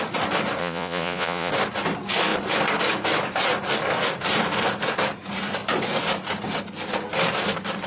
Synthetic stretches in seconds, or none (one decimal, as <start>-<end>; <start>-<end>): 0.6-1.5

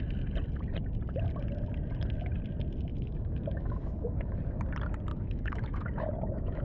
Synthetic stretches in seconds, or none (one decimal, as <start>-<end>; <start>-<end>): 2.9-4.4; 5.1-6.6

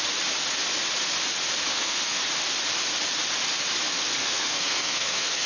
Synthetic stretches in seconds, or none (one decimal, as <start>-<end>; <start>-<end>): 1.7-2.2; 4.2-5.5

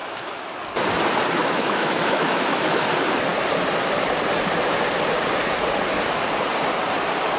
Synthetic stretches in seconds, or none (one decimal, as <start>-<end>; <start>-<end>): 0.0-0.6; 1.4-2.8

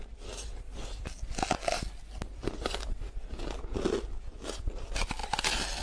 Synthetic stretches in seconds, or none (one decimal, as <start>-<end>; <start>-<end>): none

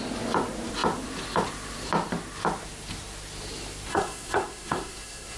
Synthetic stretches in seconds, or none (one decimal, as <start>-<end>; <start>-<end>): 3.9-5.4